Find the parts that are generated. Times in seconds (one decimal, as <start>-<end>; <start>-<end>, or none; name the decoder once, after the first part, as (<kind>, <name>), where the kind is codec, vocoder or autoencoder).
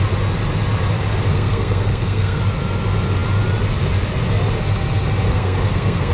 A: 1.3-2.4 (codec, SNAC); 5.3-6.1